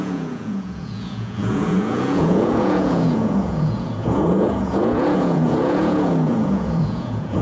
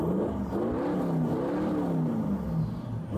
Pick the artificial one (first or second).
first